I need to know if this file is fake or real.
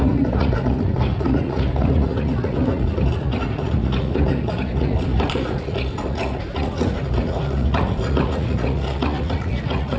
fake